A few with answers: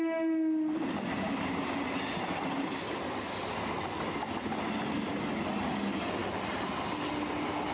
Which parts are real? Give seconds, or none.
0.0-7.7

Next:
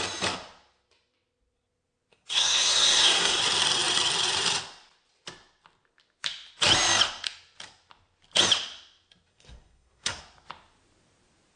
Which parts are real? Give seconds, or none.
0.0-2.1; 3.4-9.3; 10.2-11.6

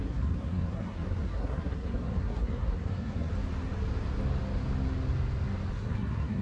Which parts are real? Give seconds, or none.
3.3-5.7

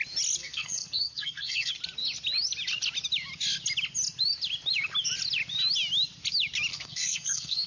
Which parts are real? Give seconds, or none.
0.0-0.4; 1.7-6.7